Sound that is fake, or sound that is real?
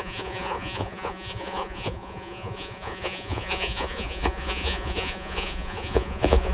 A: fake